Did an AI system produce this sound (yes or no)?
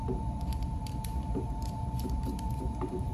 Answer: yes